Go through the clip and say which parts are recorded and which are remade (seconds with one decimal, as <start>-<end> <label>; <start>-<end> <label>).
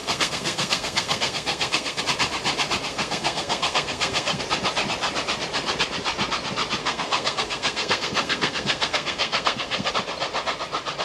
0.0-2.0 remade; 2.0-2.9 recorded; 2.9-4.4 remade; 4.4-6.8 recorded; 6.8-9.9 remade; 9.9-11.0 recorded